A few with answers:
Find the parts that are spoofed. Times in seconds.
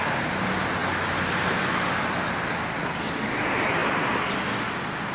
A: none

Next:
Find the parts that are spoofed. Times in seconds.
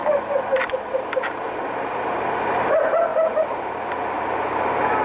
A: none